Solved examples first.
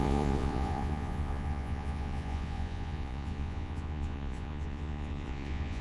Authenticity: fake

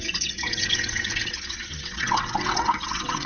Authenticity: fake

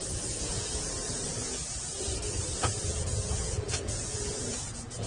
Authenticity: fake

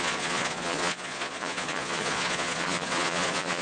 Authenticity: fake